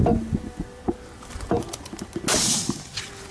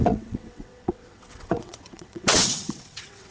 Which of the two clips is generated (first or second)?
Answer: second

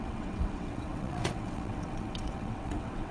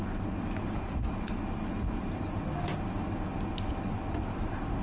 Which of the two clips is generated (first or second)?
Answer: first